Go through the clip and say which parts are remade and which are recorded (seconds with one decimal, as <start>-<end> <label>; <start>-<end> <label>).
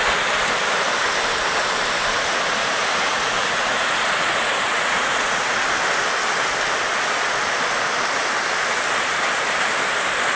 0.0-2.6 recorded; 2.6-5.6 remade; 5.6-10.4 recorded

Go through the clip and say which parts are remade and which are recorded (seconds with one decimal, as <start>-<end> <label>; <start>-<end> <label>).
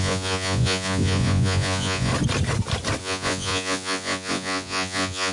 0.0-2.1 remade; 2.1-3.0 recorded; 3.0-5.3 remade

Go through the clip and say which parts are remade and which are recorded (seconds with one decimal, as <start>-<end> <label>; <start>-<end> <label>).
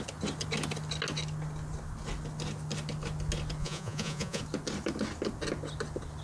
0.0-3.6 recorded; 3.6-4.4 remade; 4.4-6.2 recorded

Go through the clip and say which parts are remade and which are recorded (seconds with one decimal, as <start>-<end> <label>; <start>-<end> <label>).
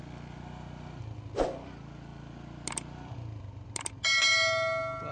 0.0-5.1 recorded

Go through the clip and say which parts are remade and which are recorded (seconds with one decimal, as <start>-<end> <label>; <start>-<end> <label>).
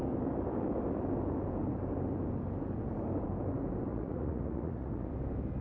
0.0-3.9 recorded; 3.9-5.1 remade; 5.1-5.6 recorded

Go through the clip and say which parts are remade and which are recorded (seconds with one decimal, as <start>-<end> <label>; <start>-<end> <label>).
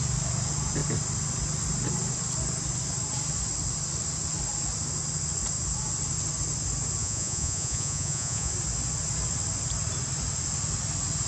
0.0-7.0 recorded; 7.0-8.5 remade; 8.5-11.3 recorded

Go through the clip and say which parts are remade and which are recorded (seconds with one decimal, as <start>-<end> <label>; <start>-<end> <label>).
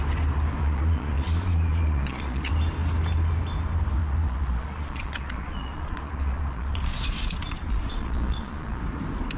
0.0-0.6 recorded; 0.6-2.5 remade; 2.5-4.0 recorded; 4.0-8.8 remade; 8.8-9.4 recorded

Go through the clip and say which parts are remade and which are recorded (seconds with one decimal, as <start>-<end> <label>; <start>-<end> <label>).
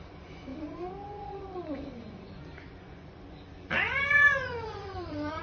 0.0-5.4 remade